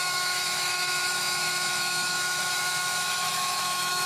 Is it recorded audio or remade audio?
remade